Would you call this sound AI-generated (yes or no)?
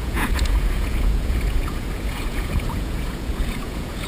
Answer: yes